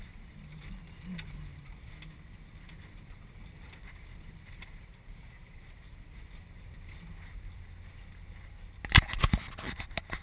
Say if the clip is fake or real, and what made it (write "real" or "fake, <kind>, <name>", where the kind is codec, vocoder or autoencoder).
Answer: real